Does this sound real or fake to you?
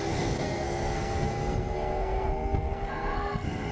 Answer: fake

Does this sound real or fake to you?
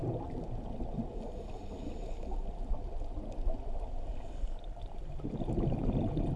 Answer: real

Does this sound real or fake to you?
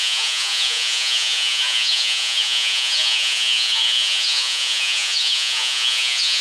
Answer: fake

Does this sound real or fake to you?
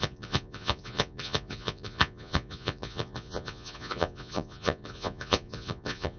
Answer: fake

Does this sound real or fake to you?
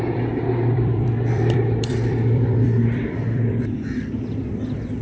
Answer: fake